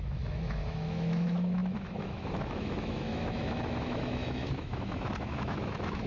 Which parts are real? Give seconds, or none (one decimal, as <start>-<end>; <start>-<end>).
none